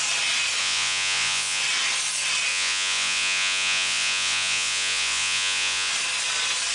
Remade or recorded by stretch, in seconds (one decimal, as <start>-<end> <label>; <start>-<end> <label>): 0.0-0.6 recorded; 0.6-1.6 remade; 1.6-2.5 recorded; 2.5-5.9 remade; 5.9-6.7 recorded